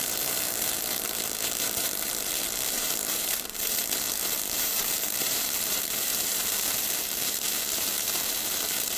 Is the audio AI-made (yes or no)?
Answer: yes